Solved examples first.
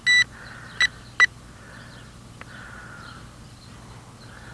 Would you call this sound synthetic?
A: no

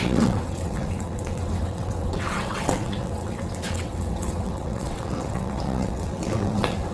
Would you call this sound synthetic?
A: yes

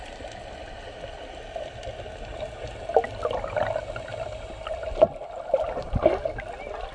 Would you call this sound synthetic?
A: no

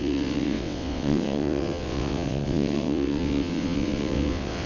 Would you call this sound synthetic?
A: yes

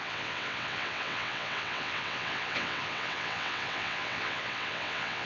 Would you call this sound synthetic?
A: yes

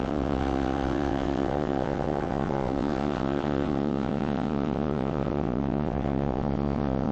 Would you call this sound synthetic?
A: yes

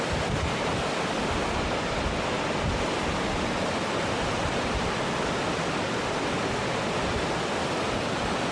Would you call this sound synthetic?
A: no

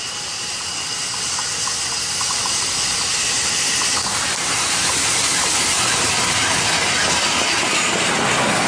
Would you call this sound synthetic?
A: no